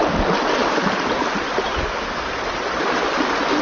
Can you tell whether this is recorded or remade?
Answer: recorded